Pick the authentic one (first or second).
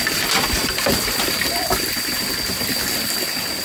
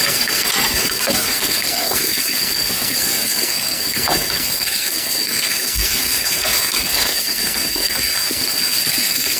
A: first